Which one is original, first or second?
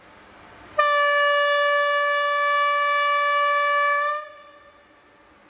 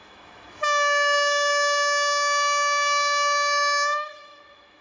first